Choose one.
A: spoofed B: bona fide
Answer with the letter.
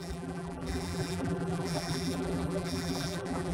A